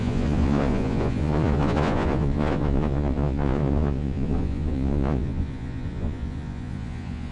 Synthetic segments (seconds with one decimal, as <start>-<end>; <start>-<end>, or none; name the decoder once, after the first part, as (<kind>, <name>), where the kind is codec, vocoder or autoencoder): 0.0-7.3 (vocoder, Vocos)